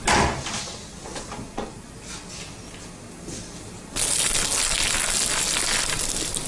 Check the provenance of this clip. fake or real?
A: real